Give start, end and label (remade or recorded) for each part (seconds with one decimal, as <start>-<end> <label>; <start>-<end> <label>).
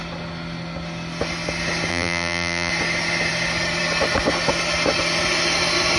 0.0-1.9 recorded; 1.9-2.7 remade; 2.7-6.0 recorded